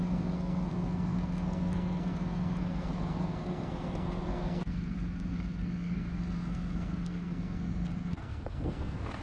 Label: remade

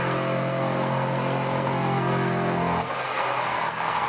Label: remade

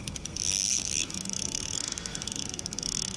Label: remade